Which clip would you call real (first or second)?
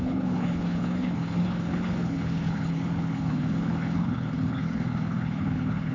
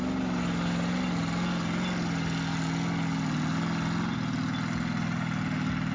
second